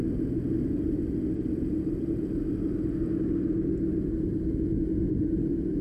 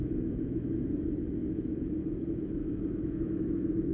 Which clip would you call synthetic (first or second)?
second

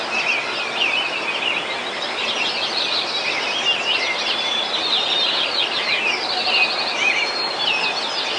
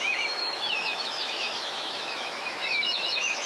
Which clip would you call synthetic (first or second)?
second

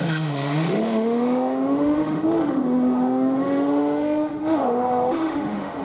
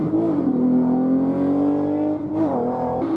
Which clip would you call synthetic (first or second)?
first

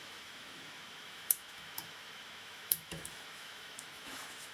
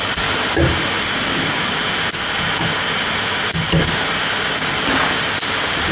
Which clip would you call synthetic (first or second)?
first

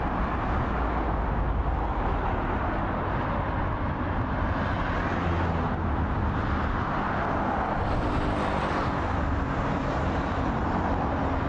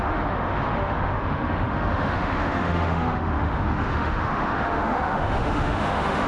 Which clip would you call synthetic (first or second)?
second